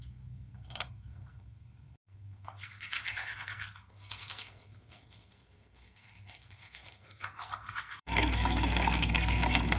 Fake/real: fake